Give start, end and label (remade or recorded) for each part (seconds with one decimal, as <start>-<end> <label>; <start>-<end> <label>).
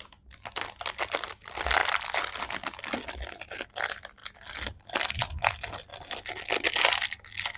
0.0-5.9 recorded; 5.9-6.4 remade; 6.4-7.6 recorded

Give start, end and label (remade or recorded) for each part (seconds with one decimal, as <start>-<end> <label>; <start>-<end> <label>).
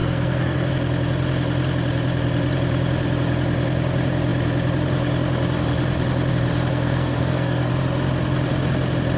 0.0-0.7 remade; 0.7-6.7 recorded; 6.7-7.7 remade; 7.7-9.2 recorded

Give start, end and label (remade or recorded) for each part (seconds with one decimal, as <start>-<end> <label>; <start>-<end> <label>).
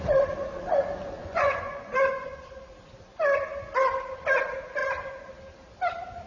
0.0-1.2 recorded; 1.2-2.4 remade; 2.4-6.3 recorded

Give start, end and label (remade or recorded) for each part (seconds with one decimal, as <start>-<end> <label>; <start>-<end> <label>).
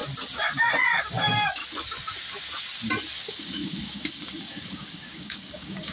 0.0-1.0 recorded; 1.0-1.6 remade; 1.6-3.2 recorded; 3.2-5.9 remade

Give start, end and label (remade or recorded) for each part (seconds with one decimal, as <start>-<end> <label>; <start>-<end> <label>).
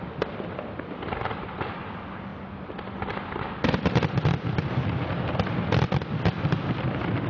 0.0-7.3 recorded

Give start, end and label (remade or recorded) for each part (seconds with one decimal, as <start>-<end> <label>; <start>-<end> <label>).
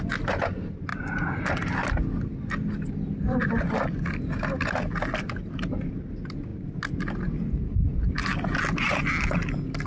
0.0-9.9 recorded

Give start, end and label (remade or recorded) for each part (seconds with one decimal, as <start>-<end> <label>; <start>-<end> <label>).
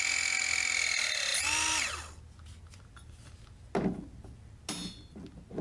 0.0-5.6 recorded